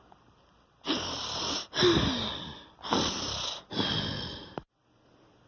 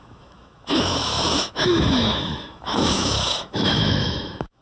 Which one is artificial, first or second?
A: second